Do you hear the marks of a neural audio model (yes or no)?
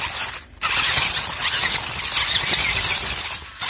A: no